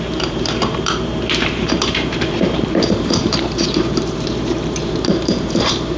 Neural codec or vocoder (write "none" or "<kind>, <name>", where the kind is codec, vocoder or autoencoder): vocoder, BigVGAN v2